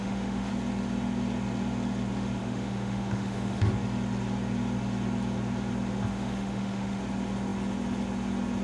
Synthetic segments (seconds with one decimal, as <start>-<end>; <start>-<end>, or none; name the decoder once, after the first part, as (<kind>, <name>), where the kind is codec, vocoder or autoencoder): 0.0-0.5 (autoencoder, DAC-VAE); 2.4-3.7; 6.1-7.0